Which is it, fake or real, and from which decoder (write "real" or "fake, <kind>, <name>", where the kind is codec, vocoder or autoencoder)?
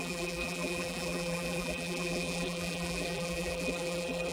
fake, vocoder, BigVGAN v2